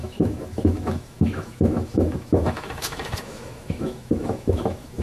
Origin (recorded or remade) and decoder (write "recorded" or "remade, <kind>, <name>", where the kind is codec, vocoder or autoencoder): remade, autoencoder, DAC-VAE